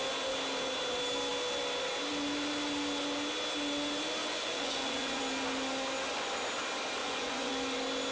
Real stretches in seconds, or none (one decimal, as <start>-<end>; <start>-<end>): 0.0-4.2; 5.2-7.0; 7.5-8.1